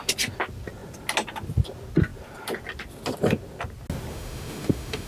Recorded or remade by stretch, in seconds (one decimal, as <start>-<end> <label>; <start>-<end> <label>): 0.0-4.1 recorded; 4.1-5.1 remade